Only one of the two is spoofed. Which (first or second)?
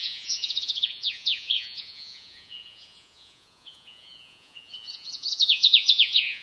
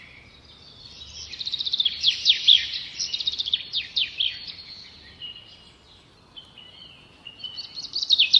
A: first